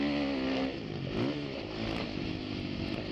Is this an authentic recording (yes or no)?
yes